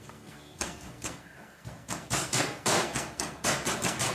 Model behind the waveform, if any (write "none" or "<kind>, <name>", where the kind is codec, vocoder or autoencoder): codec, SNAC